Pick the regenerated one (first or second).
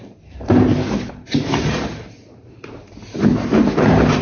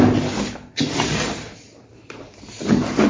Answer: first